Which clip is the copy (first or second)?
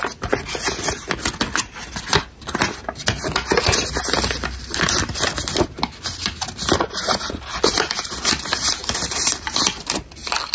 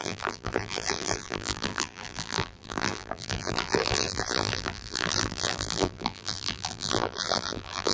second